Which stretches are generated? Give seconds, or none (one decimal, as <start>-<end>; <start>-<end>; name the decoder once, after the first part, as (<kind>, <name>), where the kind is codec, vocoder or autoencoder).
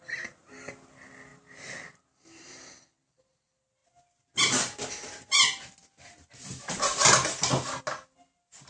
1.3-2.0 (vocoder, BigVGAN v2)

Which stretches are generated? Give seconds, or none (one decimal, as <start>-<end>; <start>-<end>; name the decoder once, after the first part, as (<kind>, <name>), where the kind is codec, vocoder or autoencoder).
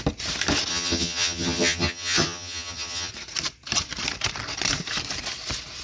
0.7-3.1 (vocoder, HiFi-GAN)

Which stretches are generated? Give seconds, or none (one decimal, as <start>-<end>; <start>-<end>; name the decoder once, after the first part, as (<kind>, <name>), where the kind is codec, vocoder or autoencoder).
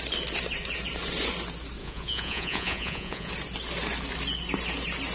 1.8-3.3 (vocoder, Vocos)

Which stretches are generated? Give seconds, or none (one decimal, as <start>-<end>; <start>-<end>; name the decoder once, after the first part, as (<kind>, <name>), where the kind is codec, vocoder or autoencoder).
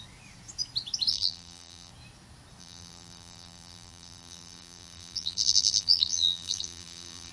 1.1-1.9 (vocoder, BigVGAN v2); 2.6-7.3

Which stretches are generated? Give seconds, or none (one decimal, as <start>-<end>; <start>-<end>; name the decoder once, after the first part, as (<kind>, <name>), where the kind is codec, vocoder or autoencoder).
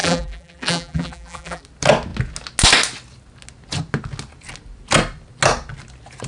0.0-1.6 (vocoder, BigVGAN v2)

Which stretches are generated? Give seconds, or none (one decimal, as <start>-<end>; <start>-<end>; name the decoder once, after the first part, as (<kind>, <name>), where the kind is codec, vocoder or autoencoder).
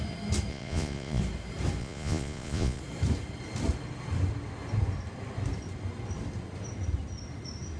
0.5-1.2 (vocoder, Vocos); 1.8-2.8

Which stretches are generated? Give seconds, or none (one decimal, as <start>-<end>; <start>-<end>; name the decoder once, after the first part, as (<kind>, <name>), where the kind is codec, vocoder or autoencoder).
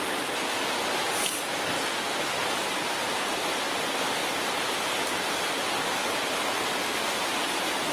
none